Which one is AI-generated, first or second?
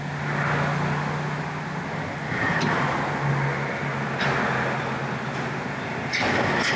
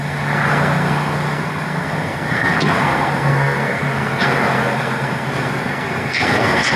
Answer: second